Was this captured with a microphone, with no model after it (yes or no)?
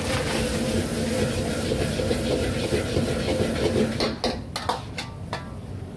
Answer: yes